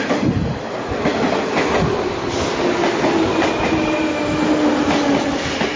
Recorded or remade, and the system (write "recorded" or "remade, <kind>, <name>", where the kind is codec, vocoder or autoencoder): recorded